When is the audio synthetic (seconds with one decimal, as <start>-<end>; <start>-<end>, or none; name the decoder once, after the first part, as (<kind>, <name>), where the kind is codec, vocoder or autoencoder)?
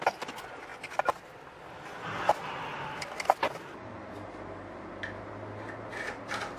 none